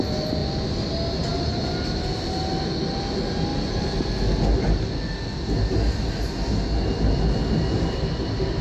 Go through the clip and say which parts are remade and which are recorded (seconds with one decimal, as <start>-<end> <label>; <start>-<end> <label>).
0.0-8.6 recorded

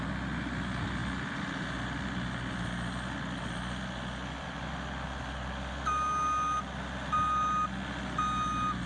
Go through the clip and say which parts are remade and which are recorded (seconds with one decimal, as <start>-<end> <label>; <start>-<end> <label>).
0.0-8.9 recorded

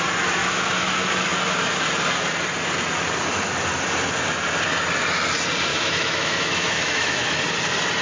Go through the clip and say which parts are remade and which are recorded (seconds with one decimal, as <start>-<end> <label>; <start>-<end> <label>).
0.0-0.4 recorded; 0.4-0.9 remade; 0.9-5.7 recorded; 5.7-7.4 remade; 7.4-8.0 recorded

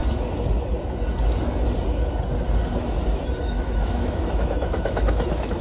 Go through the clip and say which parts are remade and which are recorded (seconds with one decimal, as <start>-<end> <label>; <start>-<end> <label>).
0.0-3.4 recorded; 3.4-5.6 remade

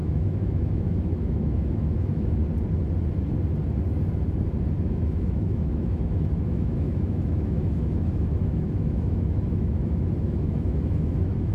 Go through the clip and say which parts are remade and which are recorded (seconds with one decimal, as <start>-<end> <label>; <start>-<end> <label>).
0.0-2.4 remade; 2.4-4.8 recorded; 4.8-11.5 remade

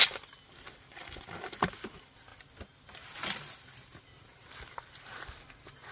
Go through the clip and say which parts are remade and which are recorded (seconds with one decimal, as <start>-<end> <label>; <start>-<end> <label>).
0.0-5.9 recorded

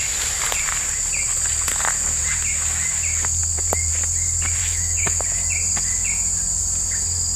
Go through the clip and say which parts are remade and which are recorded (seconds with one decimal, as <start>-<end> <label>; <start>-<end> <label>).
0.0-4.6 recorded; 4.6-5.2 remade; 5.2-7.4 recorded

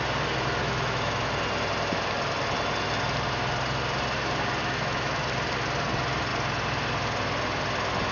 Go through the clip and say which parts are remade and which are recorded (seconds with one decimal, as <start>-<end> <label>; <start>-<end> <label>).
0.0-0.6 recorded; 0.6-1.3 remade; 1.3-4.6 recorded; 4.6-5.2 remade; 5.2-8.1 recorded